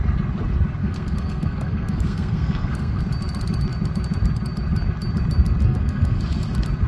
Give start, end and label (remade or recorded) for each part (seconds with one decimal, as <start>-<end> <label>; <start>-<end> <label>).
0.0-0.8 recorded; 0.8-3.0 remade; 3.0-5.6 recorded; 5.6-6.2 remade; 6.2-6.9 recorded